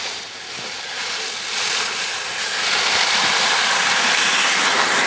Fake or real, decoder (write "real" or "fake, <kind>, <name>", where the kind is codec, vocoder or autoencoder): real